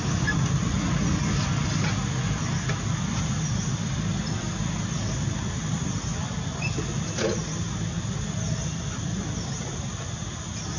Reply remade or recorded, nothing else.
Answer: recorded